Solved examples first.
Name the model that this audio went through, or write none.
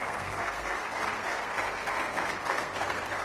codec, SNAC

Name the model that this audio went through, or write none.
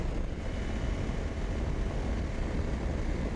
none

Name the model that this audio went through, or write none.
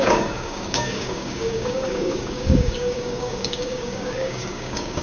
codec, DAC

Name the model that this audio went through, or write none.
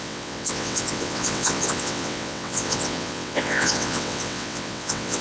vocoder, WaveNeXt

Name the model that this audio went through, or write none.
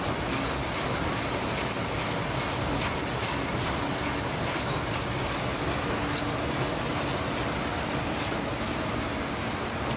none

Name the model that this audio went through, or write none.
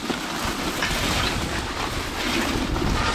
none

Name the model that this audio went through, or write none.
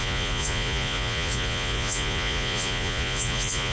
vocoder, Vocos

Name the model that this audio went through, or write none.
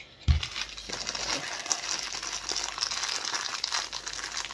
none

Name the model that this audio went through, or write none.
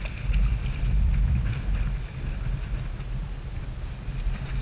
none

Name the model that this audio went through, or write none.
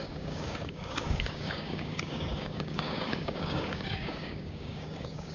codec, DAC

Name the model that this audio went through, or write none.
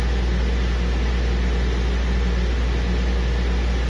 none